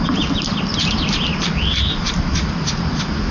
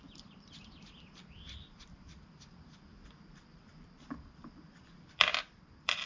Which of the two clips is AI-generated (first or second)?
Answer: second